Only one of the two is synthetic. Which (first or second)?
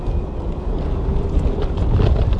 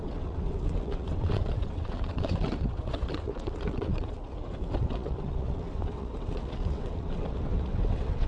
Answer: second